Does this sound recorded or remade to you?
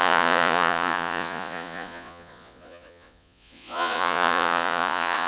remade